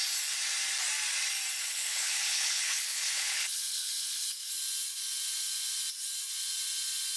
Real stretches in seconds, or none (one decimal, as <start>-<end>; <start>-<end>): 0.0-1.6; 4.5-7.2